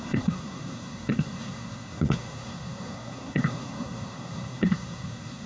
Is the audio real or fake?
fake